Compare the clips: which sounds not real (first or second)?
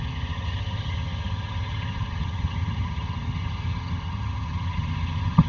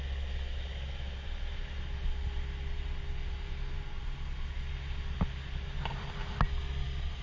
first